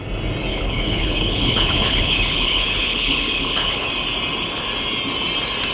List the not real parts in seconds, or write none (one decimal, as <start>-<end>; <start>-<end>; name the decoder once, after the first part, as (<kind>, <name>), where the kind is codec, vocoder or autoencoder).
0.5-3.9 (codec, HILCodec)